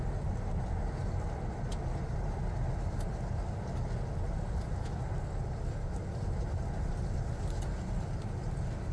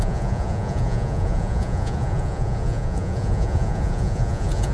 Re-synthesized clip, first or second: second